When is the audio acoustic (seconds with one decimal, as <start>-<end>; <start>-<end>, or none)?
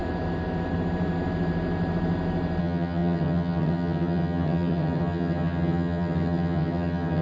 0.0-2.6